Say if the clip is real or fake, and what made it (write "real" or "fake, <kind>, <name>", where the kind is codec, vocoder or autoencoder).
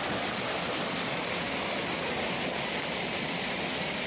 real